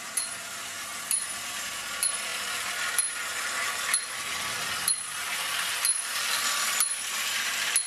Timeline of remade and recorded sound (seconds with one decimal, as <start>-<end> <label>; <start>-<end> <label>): 0.0-7.9 recorded